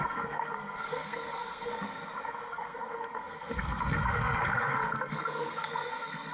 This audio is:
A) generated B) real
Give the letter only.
A